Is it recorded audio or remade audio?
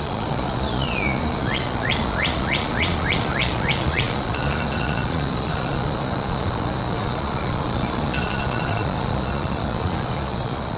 remade